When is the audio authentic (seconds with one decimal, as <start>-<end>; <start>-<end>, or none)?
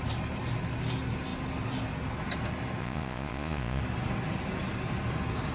0.0-2.8; 3.8-5.5